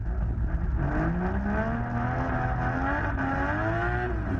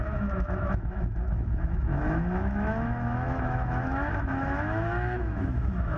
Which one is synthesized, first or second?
second